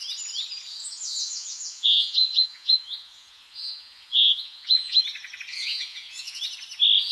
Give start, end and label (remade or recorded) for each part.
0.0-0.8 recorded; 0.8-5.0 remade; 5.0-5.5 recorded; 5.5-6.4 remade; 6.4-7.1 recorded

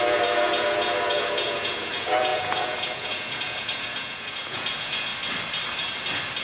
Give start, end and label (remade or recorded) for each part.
0.0-5.1 remade; 5.1-6.4 recorded

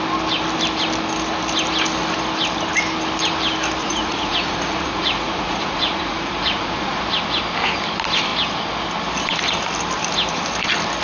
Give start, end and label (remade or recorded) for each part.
0.0-3.8 recorded; 3.8-7.0 remade; 7.0-11.0 recorded

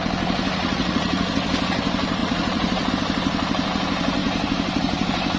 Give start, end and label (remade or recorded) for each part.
0.0-0.6 recorded; 0.6-1.2 remade; 1.2-2.2 recorded; 2.2-2.9 remade; 2.9-5.4 recorded